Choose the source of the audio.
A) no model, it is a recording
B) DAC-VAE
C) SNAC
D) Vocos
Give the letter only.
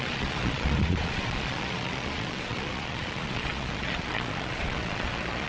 D